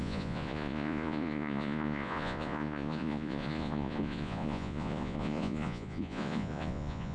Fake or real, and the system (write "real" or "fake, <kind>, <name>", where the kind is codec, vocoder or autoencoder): fake, vocoder, Vocos